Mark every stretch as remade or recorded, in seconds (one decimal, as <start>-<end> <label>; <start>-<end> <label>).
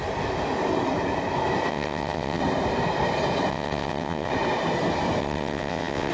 0.0-1.7 recorded; 1.7-2.4 remade; 2.4-3.5 recorded; 3.5-4.3 remade; 4.3-5.2 recorded; 5.2-6.1 remade